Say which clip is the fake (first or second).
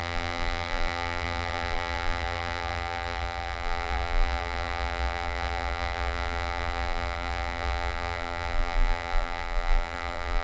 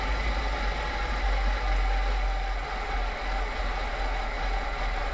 first